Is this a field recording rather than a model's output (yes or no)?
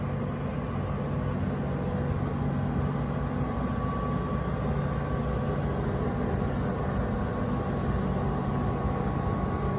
yes